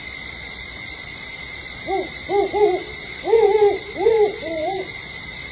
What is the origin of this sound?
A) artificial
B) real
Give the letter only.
A